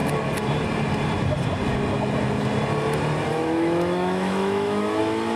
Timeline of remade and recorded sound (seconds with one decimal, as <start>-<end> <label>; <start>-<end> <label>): 0.0-3.3 recorded; 3.3-5.0 remade; 5.0-5.4 recorded

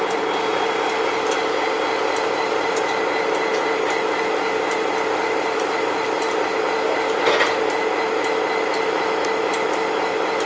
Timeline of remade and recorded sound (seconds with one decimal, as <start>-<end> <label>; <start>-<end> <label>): 0.0-10.5 recorded

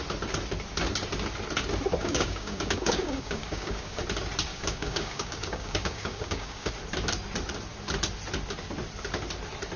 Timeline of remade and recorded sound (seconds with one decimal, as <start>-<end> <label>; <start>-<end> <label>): 0.0-2.0 recorded; 2.0-4.0 remade; 4.0-4.5 recorded; 4.5-6.7 remade; 6.7-9.8 recorded

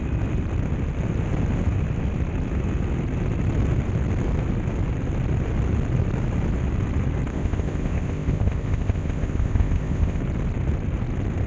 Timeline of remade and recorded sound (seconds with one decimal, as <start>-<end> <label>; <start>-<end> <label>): 0.0-7.3 recorded; 7.3-10.2 remade; 10.2-11.5 recorded

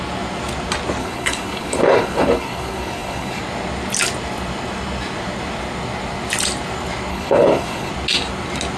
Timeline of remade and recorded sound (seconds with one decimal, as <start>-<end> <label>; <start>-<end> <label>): 0.0-1.0 recorded; 1.0-3.4 remade; 3.4-7.1 recorded; 7.1-7.9 remade; 7.9-8.8 recorded